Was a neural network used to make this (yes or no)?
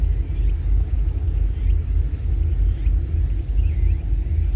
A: no